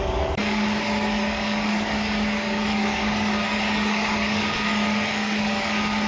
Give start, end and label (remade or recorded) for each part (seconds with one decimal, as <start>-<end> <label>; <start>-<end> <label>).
0.0-6.1 remade